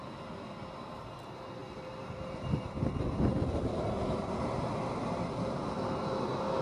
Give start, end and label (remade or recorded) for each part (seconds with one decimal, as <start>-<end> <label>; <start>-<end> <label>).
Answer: 0.0-1.6 recorded; 1.6-2.6 remade; 2.6-6.6 recorded